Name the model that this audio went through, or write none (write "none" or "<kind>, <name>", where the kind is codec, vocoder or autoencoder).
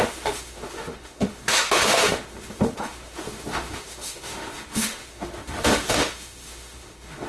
autoencoder, DAC-VAE